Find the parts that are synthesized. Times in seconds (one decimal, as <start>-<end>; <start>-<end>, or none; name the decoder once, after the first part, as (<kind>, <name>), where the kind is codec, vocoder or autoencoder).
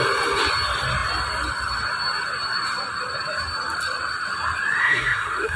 4.8-5.6 (codec, SNAC)